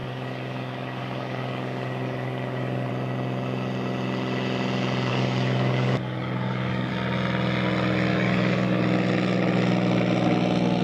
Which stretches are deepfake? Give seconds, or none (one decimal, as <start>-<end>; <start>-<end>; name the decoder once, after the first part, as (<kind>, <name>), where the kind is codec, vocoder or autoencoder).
0.0-2.9 (codec, DAC); 5.1-6.9; 8.1-8.8

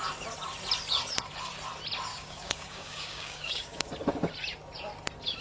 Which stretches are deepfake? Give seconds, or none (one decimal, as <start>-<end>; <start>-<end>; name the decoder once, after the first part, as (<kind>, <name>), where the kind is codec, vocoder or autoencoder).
2.1-3.9 (codec, DAC)

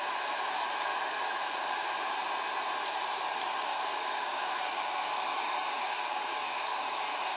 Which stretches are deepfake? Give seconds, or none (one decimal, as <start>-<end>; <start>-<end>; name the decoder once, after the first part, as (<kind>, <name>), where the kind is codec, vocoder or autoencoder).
3.7-5.1 (codec, DAC); 5.8-7.0

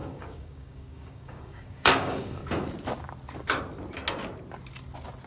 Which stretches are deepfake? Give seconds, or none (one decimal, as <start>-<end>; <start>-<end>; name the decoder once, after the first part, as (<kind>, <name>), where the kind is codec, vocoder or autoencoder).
0.0-2.4 (codec, DAC)

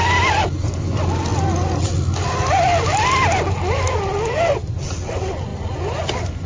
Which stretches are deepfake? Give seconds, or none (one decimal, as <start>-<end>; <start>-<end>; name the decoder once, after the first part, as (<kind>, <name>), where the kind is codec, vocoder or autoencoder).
none

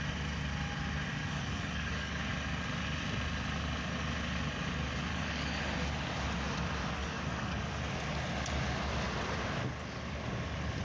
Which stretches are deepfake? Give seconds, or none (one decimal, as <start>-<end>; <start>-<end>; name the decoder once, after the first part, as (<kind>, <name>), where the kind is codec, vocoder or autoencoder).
1.2-2.3 (codec, DAC); 5.1-5.6; 7.0-7.8

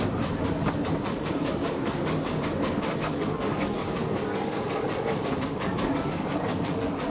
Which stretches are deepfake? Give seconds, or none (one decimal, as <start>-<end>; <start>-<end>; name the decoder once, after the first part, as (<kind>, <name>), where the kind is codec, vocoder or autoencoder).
0.6-2.4 (codec, DAC); 3.1-7.1

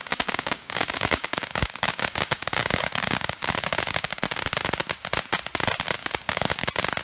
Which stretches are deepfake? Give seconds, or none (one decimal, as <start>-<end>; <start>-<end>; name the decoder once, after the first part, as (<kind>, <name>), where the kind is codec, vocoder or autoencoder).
0.0-4.2 (codec, DAC); 6.0-6.6